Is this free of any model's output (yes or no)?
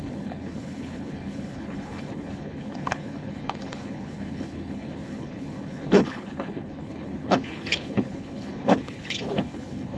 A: no